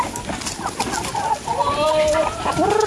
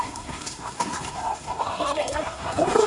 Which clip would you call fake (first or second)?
second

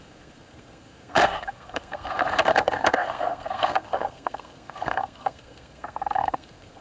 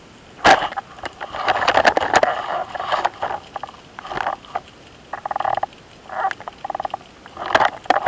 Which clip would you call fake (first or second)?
first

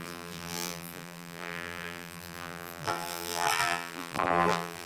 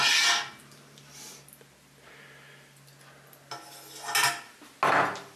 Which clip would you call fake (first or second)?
first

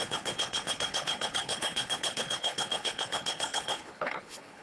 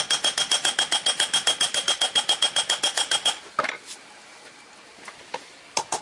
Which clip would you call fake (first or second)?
first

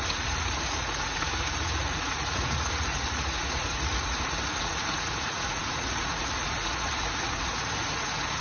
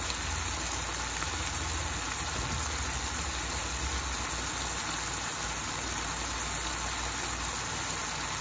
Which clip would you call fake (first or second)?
first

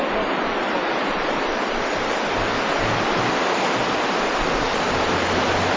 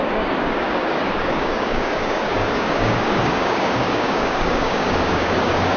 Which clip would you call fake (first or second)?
second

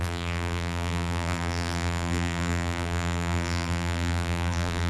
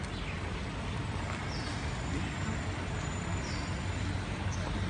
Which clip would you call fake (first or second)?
first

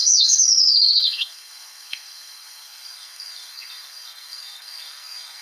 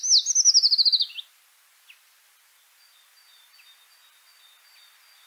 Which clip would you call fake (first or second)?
first